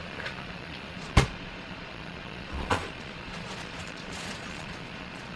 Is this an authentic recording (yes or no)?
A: no